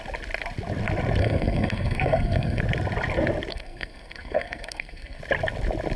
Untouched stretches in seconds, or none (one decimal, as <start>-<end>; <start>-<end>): 0.0-1.2; 2.6-3.5; 5.2-6.0